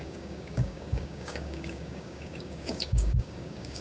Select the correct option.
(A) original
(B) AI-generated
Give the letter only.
B